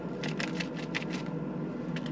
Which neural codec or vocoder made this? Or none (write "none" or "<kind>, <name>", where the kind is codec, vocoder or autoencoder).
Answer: none